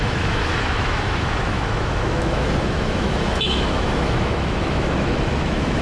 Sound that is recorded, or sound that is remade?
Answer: remade